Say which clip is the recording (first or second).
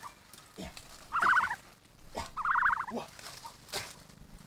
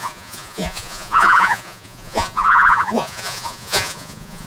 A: first